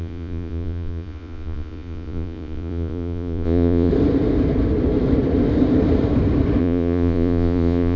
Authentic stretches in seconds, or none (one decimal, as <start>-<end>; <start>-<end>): 3.9-6.6